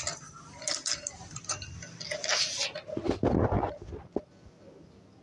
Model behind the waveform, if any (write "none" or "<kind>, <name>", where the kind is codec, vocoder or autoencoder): none